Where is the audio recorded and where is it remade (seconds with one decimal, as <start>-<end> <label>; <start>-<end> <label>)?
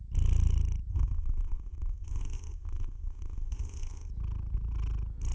0.0-0.9 recorded; 0.9-4.1 remade; 4.1-5.3 recorded